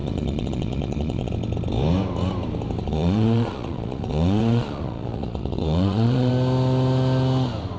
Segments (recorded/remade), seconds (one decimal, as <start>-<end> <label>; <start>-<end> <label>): 0.0-1.3 remade; 1.3-2.8 recorded; 2.8-6.3 remade; 6.3-7.8 recorded